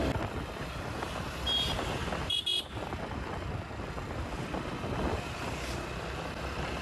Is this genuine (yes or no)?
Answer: yes